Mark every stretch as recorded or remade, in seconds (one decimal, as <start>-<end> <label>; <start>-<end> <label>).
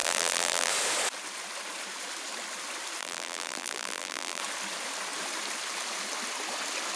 0.0-0.7 remade; 0.7-3.0 recorded; 3.0-4.4 remade; 4.4-7.0 recorded